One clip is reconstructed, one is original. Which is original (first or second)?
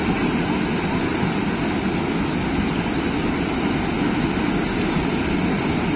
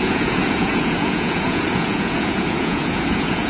first